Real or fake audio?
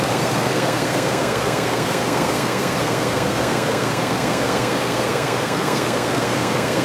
fake